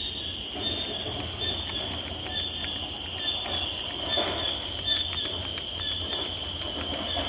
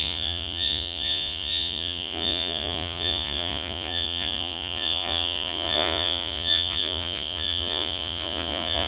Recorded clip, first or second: first